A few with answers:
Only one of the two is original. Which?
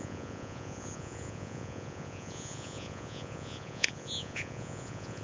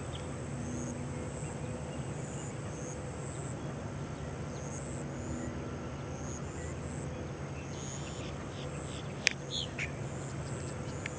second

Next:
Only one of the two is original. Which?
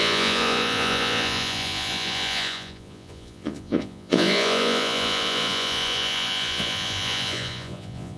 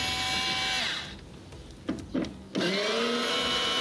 second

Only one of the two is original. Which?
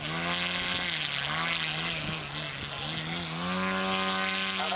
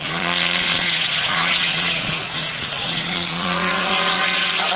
first